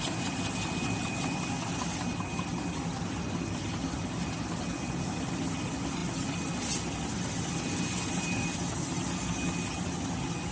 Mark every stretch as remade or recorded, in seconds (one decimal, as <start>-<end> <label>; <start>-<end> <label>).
0.0-10.5 recorded